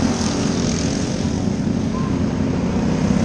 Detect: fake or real real